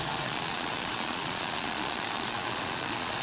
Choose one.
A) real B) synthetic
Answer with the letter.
B